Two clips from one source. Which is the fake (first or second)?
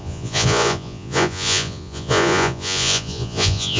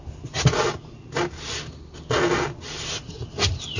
first